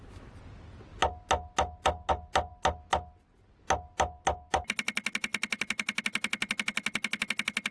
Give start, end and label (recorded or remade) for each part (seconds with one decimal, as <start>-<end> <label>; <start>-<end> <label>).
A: 0.0-7.7 recorded

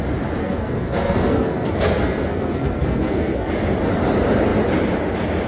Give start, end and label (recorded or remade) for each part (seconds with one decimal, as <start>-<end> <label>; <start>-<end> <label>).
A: 0.0-0.4 recorded; 0.4-3.5 remade; 3.5-5.5 recorded